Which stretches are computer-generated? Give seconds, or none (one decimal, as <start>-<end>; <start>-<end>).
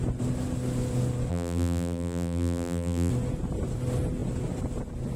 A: 1.3-3.1